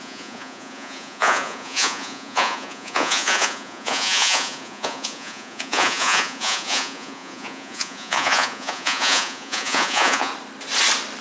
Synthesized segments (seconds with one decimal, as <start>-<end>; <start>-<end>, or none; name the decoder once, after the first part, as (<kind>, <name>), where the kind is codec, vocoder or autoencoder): 0.0-10.3 (vocoder, Vocos)